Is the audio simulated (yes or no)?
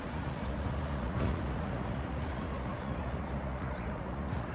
yes